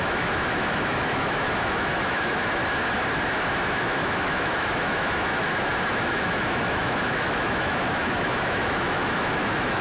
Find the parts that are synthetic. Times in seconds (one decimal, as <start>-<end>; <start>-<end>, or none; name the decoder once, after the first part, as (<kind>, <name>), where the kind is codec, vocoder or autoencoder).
0.0-2.6 (autoencoder, DAC-VAE); 3.7-9.8